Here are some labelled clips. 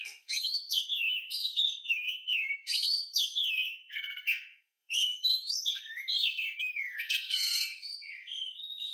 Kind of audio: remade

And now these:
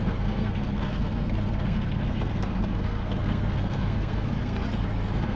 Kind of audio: remade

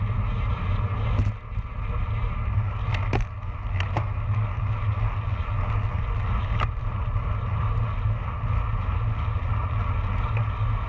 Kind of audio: recorded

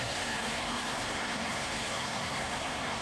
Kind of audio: remade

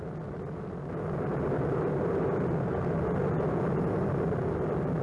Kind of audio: recorded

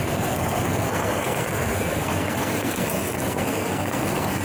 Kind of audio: remade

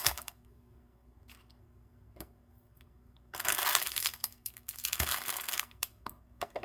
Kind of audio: remade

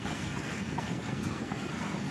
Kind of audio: remade